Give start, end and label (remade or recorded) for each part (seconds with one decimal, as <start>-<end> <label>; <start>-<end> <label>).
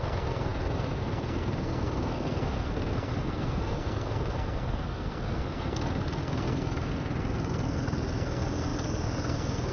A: 0.0-9.7 remade